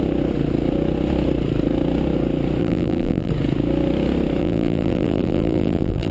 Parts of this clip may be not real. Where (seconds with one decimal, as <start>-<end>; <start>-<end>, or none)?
2.6-3.3; 4.4-6.1